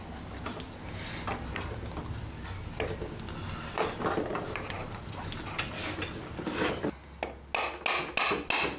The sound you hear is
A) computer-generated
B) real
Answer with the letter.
B